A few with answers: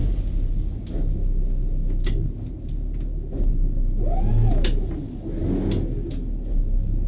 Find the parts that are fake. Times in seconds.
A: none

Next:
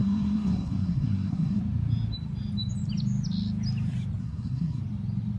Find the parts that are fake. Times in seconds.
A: 0.0-1.6 (codec, SNAC); 4.2-4.8

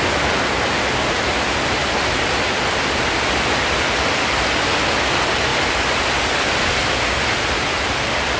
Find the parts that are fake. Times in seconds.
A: none

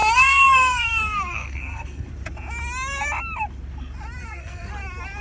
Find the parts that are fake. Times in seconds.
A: 0.0-2.1 (codec, SNAC); 4.2-4.7

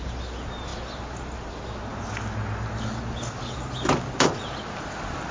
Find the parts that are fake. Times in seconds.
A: none